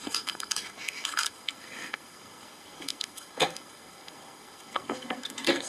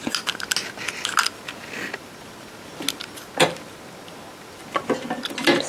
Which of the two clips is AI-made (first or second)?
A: first